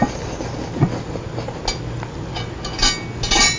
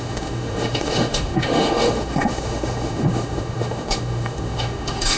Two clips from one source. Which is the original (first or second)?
first